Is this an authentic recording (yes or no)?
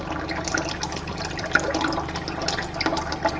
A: yes